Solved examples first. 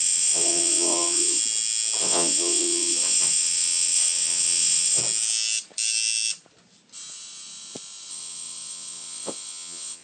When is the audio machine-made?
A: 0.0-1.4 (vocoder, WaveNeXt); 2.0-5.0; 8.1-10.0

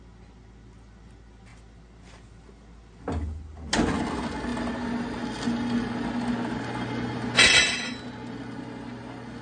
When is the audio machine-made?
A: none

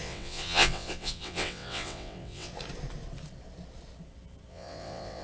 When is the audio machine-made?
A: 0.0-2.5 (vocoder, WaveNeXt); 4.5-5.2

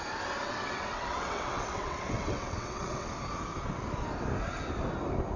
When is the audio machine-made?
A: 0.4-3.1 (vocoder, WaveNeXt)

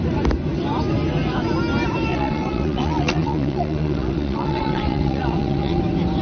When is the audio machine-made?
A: 2.1-5.8 (vocoder, WaveNeXt)

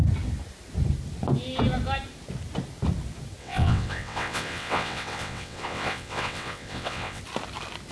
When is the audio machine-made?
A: 3.4-7.2 (vocoder, WaveNeXt)

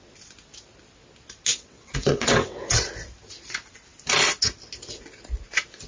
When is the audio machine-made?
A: 1.5-2.8 (vocoder, WaveNeXt)

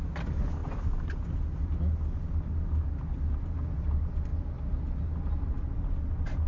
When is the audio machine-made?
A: none